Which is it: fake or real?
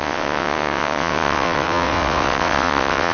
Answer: fake